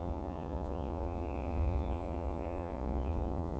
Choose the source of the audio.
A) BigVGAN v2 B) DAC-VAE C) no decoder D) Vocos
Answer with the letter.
D